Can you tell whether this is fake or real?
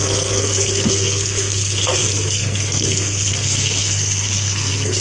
fake